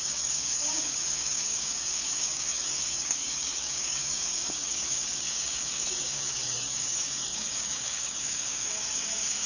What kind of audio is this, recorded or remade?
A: remade